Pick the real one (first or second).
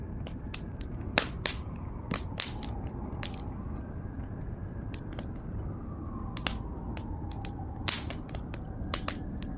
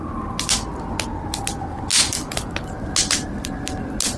second